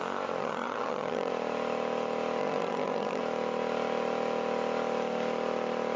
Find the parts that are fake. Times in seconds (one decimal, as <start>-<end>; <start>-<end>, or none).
0.4-1.3; 2.4-3.2